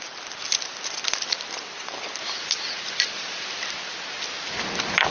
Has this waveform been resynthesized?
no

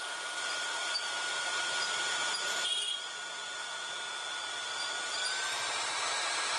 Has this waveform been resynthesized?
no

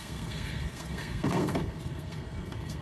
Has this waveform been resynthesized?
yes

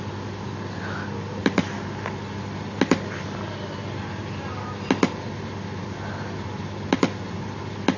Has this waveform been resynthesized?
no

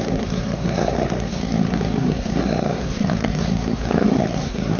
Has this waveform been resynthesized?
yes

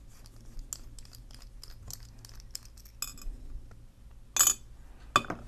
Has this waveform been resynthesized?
no